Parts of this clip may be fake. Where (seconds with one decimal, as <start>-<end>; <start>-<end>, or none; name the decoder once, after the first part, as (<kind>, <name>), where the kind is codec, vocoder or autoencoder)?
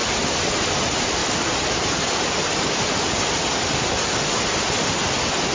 none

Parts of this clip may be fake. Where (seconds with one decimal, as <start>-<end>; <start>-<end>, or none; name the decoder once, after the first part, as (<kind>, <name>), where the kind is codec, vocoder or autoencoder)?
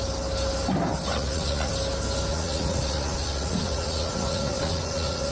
1.1-1.7 (vocoder, Vocos); 2.3-5.3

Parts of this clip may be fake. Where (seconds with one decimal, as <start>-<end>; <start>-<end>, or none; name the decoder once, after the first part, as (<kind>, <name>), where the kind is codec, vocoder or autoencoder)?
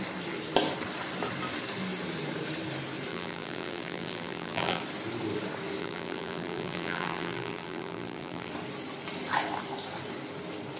3.1-4.8 (vocoder, BigVGAN v2); 5.8-8.5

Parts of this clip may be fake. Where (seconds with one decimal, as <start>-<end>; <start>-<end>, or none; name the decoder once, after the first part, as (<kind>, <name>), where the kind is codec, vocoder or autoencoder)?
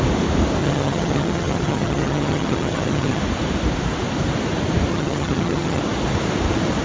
0.6-3.2 (vocoder, HiFi-GAN); 4.9-5.8